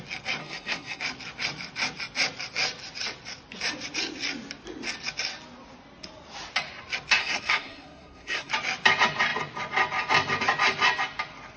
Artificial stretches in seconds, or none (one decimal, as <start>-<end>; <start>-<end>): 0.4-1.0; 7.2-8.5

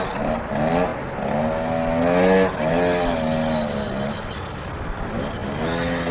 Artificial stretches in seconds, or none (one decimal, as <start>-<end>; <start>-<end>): none

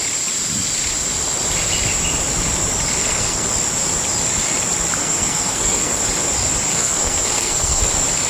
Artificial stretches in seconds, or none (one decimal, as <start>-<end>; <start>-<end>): 3.0-3.5; 5.0-6.0; 6.7-7.8

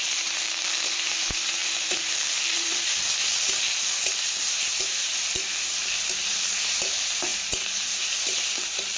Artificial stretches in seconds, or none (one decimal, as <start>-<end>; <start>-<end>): 0.0-9.0

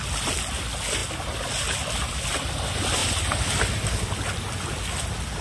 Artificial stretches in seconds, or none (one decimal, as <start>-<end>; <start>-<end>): none

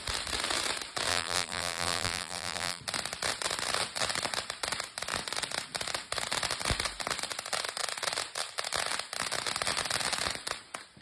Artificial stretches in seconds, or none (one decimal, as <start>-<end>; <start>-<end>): 1.1-2.8